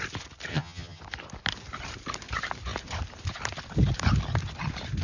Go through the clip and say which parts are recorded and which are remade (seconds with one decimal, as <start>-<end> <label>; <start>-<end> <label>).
0.0-0.5 recorded; 0.5-1.0 remade; 1.0-5.0 recorded